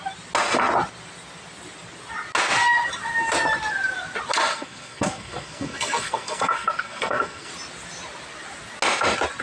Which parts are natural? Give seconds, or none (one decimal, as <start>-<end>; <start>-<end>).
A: 0.0-4.5; 7.5-9.4